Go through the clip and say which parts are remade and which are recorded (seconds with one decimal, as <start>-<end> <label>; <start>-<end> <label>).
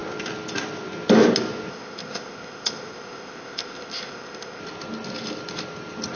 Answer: 0.0-1.7 recorded; 1.7-4.6 remade; 4.6-6.2 recorded